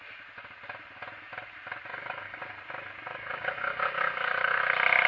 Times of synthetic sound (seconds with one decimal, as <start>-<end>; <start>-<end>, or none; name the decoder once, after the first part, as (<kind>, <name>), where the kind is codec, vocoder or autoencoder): 1.9-2.4 (codec, DAC); 3.1-4.6